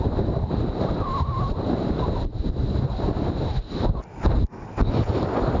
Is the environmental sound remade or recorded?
recorded